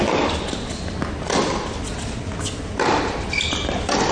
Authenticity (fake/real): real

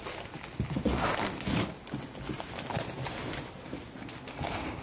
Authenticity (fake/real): real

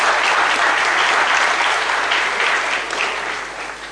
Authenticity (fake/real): fake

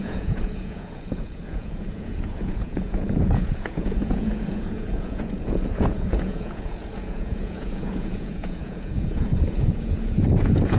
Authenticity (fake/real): fake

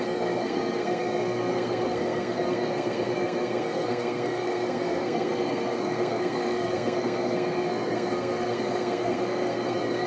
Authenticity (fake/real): fake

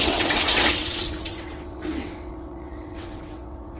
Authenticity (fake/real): fake